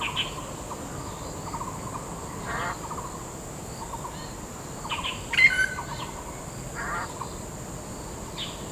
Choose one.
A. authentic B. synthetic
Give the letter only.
A